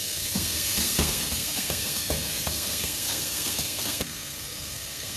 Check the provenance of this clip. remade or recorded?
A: remade